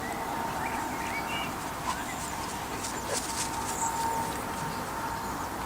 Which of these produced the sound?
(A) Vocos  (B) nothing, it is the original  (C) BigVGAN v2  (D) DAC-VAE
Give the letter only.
B